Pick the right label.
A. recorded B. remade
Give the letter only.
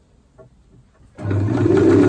A